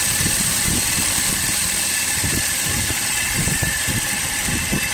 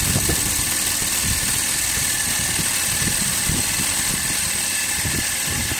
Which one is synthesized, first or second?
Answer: first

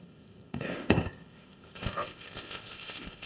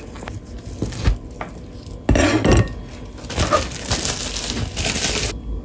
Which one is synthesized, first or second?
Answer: first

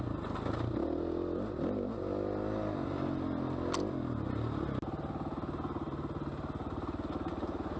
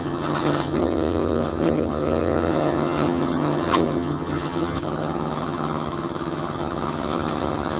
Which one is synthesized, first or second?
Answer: second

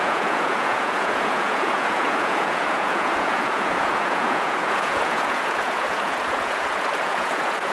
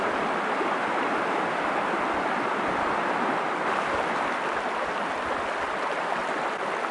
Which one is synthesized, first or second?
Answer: first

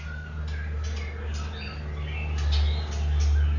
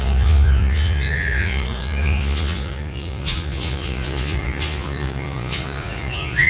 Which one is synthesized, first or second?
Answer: second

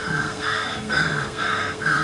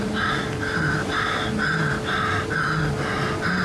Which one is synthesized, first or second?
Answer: first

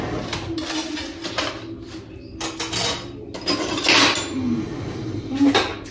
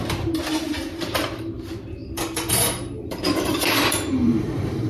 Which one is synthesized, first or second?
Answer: second